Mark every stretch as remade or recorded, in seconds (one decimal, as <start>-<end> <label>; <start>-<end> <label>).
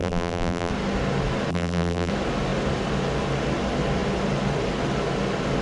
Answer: 0.0-0.7 remade; 0.7-1.5 recorded; 1.5-2.1 remade; 2.1-5.6 recorded